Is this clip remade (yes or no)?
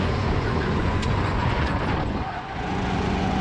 yes